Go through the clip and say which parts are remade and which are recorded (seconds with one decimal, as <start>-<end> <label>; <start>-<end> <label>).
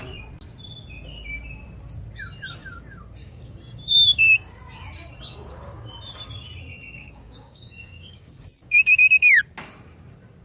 0.0-3.2 recorded; 3.2-4.2 remade; 4.2-6.7 recorded; 6.7-9.4 remade; 9.4-10.4 recorded